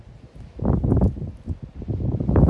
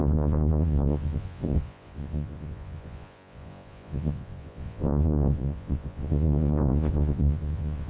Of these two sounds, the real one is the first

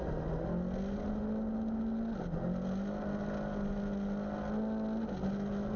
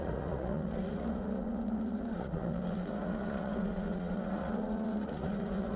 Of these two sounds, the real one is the first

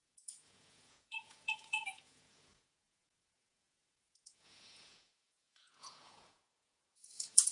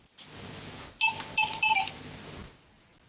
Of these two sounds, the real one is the second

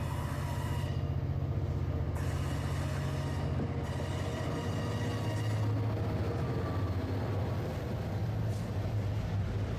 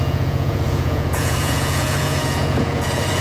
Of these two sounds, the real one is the first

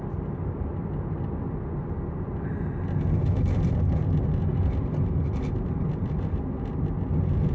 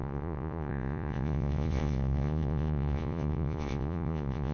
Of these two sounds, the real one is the first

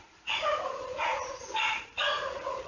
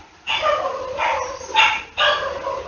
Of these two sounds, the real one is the second